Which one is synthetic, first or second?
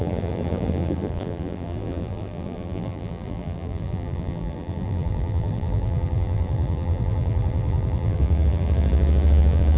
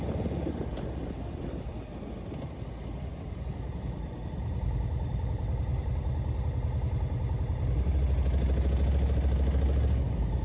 first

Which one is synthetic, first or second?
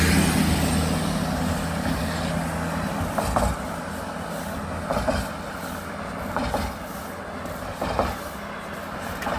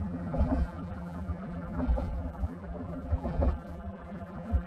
second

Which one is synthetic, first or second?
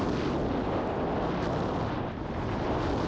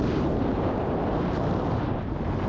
second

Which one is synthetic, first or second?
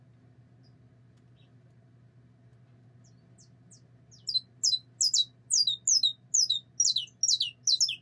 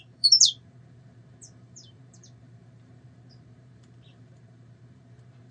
second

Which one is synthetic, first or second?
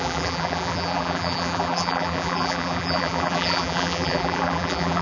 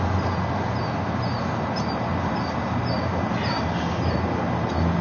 first